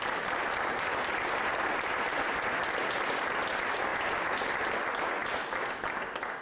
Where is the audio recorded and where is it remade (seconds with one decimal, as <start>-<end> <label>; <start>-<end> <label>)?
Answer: 0.0-6.4 recorded